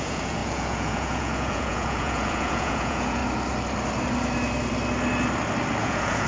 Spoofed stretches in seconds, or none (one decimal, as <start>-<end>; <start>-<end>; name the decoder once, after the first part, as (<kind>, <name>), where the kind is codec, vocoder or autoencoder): 0.0-3.2 (vocoder, Vocos); 5.8-6.3